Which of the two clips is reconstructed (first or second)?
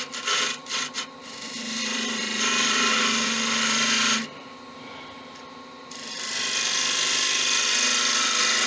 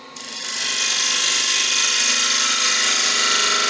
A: first